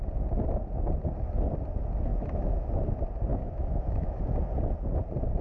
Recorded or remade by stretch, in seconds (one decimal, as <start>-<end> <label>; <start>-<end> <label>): 0.0-2.1 recorded; 2.1-2.7 remade; 2.7-3.3 recorded; 3.3-4.2 remade; 4.2-5.4 recorded